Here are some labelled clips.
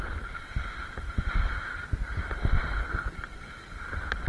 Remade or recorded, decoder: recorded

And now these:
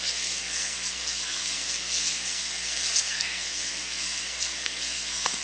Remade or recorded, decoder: remade, codec, SNAC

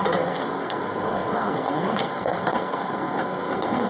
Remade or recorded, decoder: remade, codec, SNAC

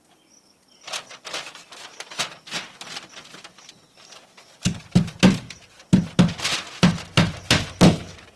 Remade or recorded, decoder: recorded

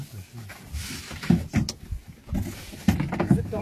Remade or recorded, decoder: recorded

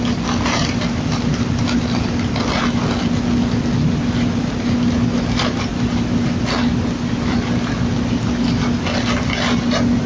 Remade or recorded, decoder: recorded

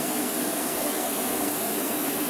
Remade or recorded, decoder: remade, codec, SNAC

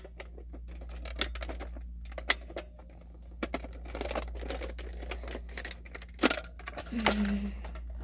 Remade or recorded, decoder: recorded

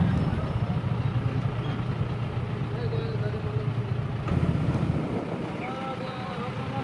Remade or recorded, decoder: recorded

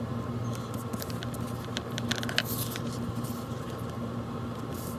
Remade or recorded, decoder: recorded